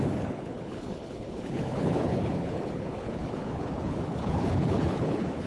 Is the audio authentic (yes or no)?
no